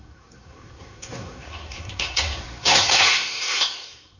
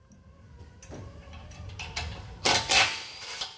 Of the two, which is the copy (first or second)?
first